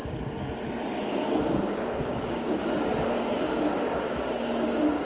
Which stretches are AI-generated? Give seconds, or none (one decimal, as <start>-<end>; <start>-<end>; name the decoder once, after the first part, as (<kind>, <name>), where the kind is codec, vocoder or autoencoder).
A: 1.5-2.6 (codec, DAC); 3.3-5.0